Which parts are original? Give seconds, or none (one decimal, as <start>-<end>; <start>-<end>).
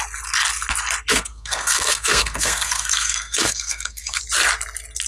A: 0.0-1.1; 4.2-5.1